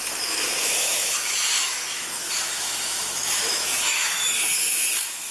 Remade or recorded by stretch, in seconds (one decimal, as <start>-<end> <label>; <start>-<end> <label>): 0.0-5.3 remade